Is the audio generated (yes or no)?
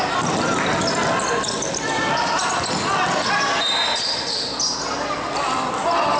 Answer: no